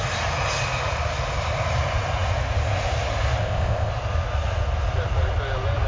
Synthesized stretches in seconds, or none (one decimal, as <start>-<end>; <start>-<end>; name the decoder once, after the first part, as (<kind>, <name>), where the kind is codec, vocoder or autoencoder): 3.4-3.9 (codec, ZipCodec)